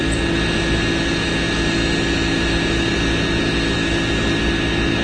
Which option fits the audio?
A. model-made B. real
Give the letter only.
B